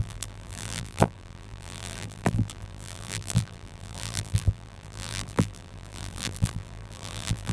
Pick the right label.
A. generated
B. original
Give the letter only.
A